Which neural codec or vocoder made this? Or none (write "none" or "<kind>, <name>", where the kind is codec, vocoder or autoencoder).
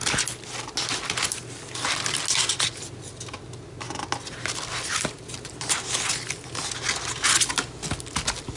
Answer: none